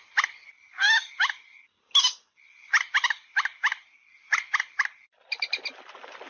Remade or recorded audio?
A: recorded